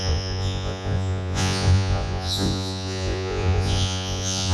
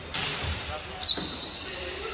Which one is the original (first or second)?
second